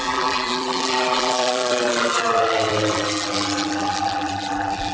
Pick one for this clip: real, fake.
fake